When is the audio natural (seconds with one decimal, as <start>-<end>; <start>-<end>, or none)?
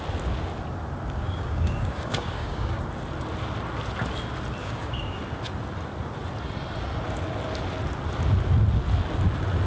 0.0-1.2; 2.8-4.6; 5.2-9.7